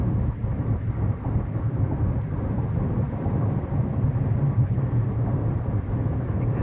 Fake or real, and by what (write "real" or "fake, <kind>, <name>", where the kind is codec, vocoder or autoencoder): fake, vocoder, BigVGAN v2